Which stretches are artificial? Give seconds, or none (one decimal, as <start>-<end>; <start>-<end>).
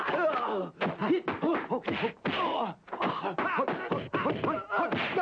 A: none